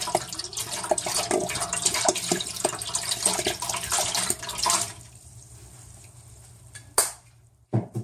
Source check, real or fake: fake